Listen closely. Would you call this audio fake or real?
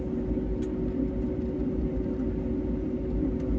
real